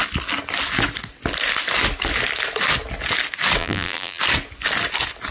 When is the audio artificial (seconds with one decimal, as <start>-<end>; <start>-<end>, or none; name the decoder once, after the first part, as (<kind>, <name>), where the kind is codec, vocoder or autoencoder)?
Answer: 3.6-4.2 (vocoder, BigVGAN v2)

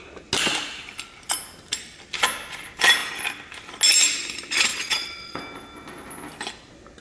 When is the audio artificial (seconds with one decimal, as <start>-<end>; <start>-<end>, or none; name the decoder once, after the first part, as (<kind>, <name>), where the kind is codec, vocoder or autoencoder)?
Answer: 4.7-5.4 (vocoder, WaveNeXt)

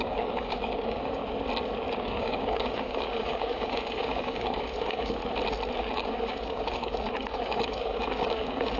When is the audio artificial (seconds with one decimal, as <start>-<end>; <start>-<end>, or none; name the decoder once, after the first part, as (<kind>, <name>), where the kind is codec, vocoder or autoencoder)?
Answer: 0.0-1.2 (codec, DAC); 1.9-5.2; 5.8-8.8

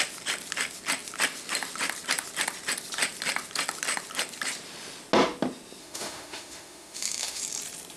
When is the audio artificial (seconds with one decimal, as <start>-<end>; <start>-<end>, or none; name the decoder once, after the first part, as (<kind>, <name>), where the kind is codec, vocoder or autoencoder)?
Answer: 5.8-7.4 (autoencoder, DAC-VAE)

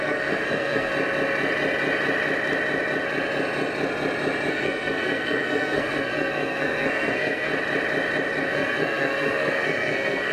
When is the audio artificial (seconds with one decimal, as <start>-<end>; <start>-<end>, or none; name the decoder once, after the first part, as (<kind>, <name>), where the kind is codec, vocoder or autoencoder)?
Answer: 0.0-0.9 (codec, SNAC); 4.5-7.5; 8.4-10.3

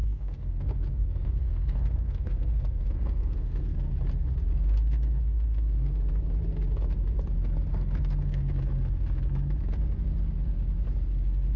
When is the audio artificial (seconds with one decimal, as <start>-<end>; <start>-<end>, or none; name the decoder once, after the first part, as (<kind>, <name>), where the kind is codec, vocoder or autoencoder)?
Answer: 0.0-3.9 (codec, SNAC); 4.5-6.0; 7.7-8.4